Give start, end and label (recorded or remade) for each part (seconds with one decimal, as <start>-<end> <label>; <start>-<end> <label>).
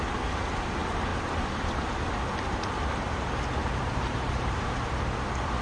0.0-1.1 recorded; 1.1-2.2 remade; 2.2-3.6 recorded; 3.6-4.9 remade; 4.9-5.6 recorded